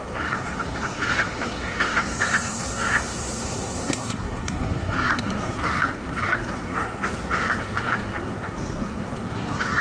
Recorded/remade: remade